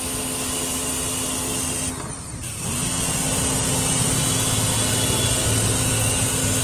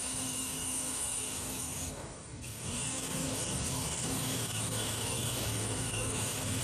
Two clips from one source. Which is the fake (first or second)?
second